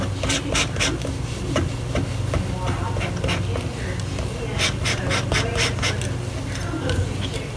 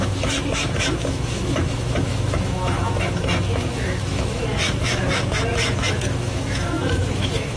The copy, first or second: second